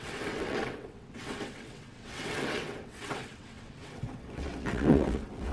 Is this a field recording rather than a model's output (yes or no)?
no